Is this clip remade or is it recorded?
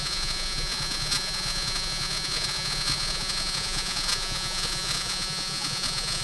remade